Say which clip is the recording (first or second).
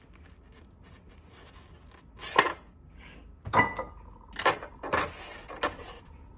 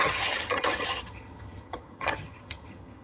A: first